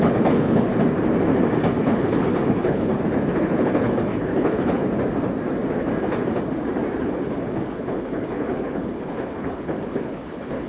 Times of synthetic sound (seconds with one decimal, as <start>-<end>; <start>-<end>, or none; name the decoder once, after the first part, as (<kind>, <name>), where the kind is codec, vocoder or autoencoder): 0.0-0.7 (codec, HILCodec); 1.8-2.9; 3.4-4.8; 7.0-10.7